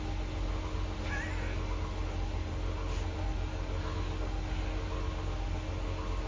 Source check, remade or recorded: recorded